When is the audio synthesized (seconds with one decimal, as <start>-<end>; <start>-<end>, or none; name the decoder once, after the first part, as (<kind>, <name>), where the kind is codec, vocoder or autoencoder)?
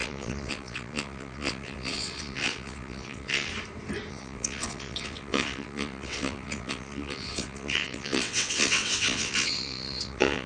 0.0-3.5 (vocoder, WaveNeXt); 4.1-10.5